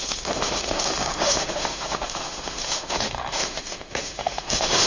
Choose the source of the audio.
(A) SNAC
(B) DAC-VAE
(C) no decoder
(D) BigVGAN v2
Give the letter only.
B